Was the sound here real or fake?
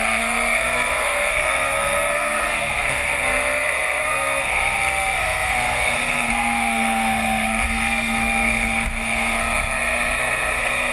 fake